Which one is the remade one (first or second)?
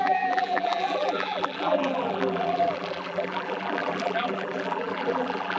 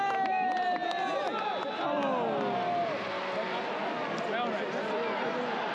first